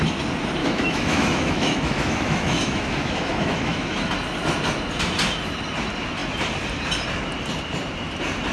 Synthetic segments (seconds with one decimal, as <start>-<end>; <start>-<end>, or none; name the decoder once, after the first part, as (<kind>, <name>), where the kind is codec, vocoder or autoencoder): 0.6-4.1 (autoencoder, DAC-VAE)